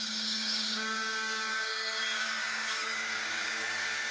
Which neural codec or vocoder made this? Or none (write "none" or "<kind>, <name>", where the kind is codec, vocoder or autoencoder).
codec, DAC